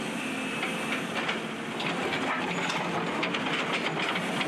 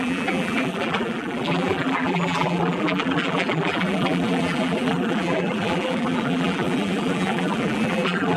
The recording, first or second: first